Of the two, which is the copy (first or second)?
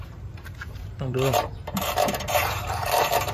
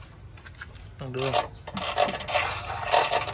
first